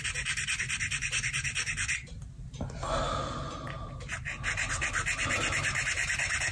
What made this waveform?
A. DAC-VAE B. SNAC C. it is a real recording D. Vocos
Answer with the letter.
C